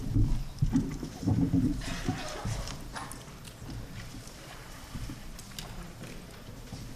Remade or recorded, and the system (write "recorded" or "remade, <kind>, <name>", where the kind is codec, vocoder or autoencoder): remade, vocoder, BigVGAN v2